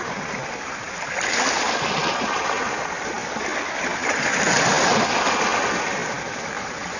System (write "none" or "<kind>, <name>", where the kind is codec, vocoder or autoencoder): none